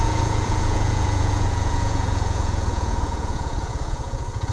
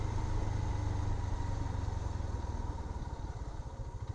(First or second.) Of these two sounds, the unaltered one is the second